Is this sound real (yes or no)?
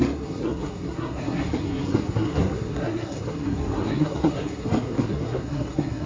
no